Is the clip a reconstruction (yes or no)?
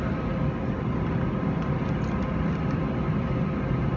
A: no